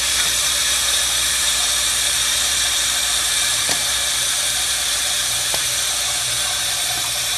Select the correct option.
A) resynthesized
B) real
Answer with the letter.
A